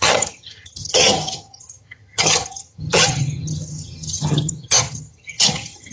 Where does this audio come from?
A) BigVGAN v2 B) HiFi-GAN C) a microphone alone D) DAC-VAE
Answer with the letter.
B